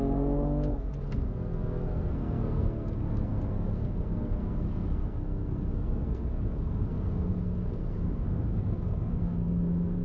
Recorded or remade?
remade